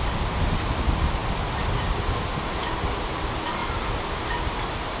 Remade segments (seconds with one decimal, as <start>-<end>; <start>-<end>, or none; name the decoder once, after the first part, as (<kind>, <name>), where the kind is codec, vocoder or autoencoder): none